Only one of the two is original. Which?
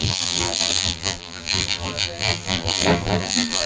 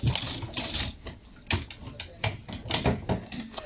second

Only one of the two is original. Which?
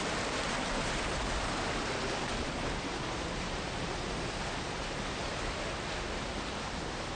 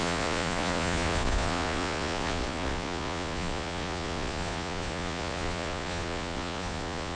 first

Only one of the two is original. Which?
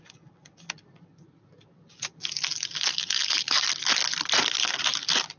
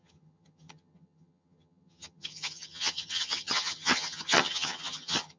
first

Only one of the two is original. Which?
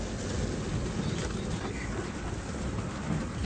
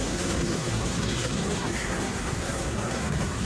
first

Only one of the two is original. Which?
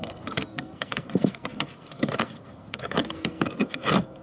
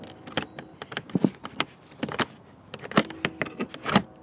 second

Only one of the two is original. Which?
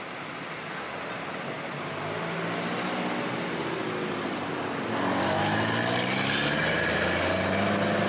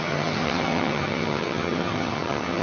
first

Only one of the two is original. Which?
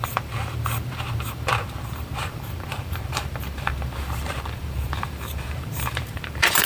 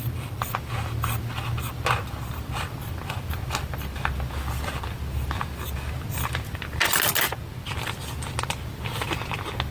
second